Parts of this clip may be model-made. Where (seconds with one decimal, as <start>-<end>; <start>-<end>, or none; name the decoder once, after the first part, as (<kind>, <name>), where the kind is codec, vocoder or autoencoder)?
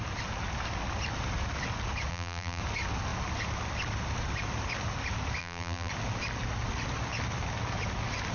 2.1-2.6 (vocoder, BigVGAN v2); 5.4-5.9